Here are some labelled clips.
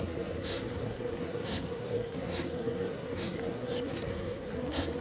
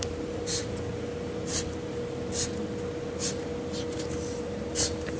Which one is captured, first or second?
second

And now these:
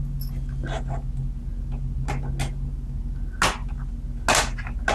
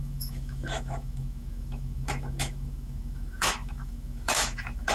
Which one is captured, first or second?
first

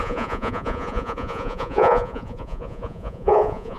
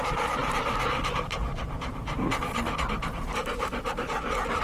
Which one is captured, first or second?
second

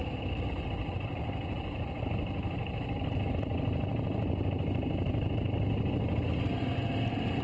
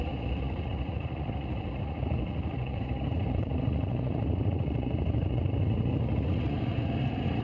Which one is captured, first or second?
first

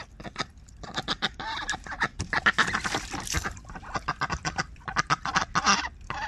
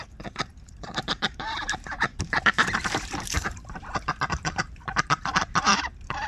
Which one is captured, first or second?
first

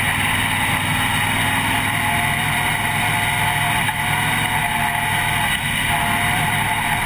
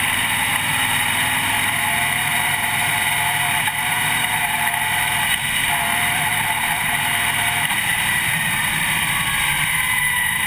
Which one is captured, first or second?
first